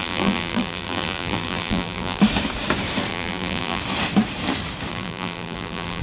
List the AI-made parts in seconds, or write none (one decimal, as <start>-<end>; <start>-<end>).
0.0-2.2; 3.1-3.8; 4.9-6.0

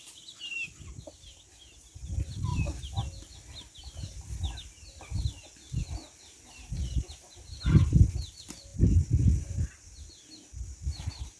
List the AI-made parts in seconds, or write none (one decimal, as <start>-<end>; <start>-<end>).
none